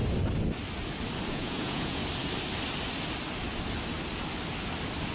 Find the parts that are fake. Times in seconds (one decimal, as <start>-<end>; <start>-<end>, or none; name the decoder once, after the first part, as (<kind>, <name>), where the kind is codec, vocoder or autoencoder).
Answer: 1.3-2.0 (vocoder, Vocos)